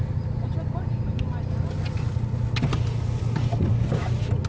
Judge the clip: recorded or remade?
recorded